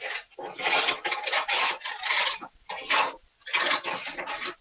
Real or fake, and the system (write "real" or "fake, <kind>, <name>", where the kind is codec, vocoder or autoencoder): real